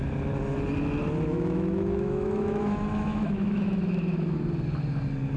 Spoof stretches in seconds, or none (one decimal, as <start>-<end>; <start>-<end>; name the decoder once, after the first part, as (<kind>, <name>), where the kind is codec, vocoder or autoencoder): 1.3-4.4 (autoencoder, DAC-VAE)